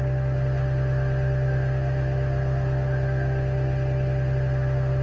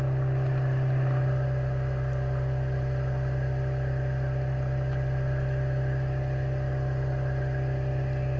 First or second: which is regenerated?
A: first